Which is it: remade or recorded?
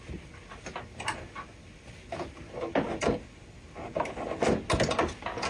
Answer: recorded